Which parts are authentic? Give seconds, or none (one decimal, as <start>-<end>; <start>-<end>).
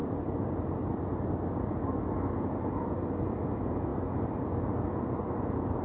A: 2.1-5.8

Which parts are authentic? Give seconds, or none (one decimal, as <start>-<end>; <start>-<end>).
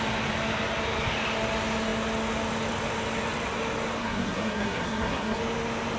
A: 0.0-4.0; 5.4-6.0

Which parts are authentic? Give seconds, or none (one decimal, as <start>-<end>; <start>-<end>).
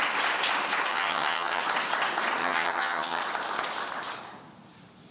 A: 0.0-0.9; 1.6-2.4; 3.2-5.1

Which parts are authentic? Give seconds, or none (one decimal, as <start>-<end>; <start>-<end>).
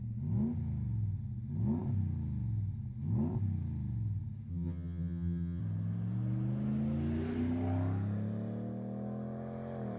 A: 0.0-4.5; 5.6-10.0